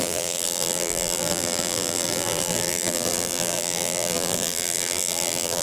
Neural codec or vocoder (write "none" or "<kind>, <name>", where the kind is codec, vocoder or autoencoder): vocoder, BigVGAN v2